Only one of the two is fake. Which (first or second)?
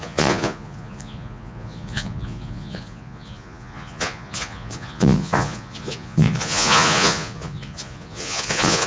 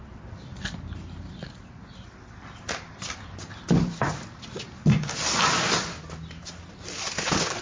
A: first